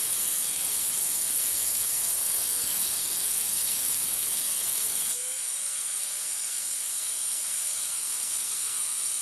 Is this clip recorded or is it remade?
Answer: remade